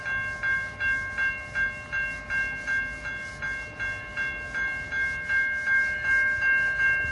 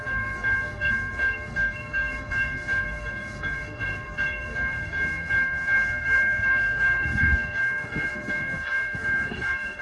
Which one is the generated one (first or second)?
second